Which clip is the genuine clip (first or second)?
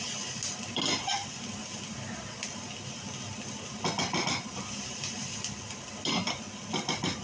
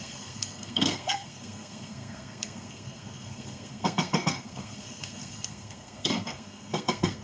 first